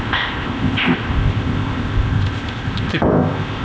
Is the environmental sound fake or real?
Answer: fake